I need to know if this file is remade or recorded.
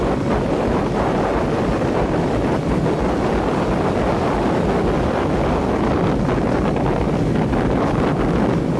recorded